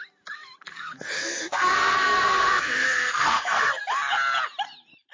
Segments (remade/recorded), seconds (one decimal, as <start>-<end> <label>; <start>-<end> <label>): 0.0-0.7 recorded; 0.7-3.8 remade; 3.8-5.1 recorded